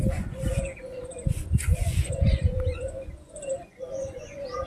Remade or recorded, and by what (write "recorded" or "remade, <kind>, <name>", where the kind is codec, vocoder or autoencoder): remade, vocoder, Vocos